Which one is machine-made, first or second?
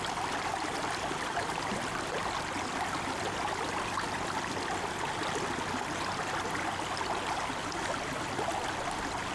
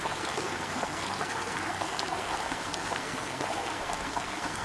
second